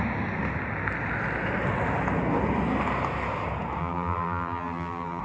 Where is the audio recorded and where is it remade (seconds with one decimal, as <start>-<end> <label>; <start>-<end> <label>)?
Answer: 0.0-3.8 recorded; 3.8-5.2 remade